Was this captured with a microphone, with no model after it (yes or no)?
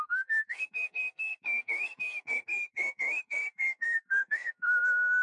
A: no